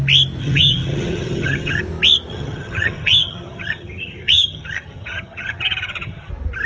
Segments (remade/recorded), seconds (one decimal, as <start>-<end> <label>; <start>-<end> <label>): 0.0-0.4 recorded; 0.4-1.8 remade; 1.8-2.3 recorded; 2.3-6.3 remade; 6.3-6.7 recorded